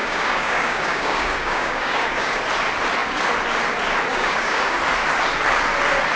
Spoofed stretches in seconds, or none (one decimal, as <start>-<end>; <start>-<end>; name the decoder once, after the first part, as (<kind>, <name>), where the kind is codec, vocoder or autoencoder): 0.0-2.4 (codec, DAC); 4.1-4.8